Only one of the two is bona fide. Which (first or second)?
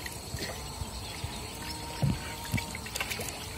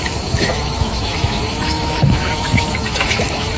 first